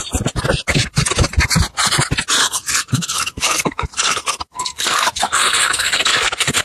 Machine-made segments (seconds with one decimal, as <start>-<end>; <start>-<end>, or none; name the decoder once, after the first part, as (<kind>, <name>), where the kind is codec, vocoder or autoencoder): 2.4-6.6 (codec, SNAC)